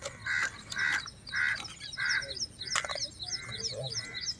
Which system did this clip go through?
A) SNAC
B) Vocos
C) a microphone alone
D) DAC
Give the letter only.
C